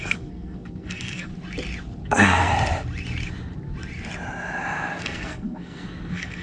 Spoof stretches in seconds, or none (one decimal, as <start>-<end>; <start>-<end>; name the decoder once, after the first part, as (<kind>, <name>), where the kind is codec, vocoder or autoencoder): 0.0-1.3 (codec, SNAC); 2.0-2.5; 5.0-6.4